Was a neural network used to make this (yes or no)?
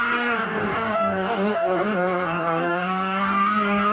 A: yes